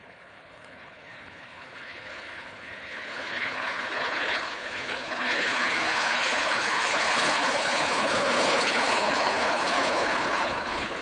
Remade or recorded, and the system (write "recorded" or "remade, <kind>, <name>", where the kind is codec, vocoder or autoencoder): remade, codec, HILCodec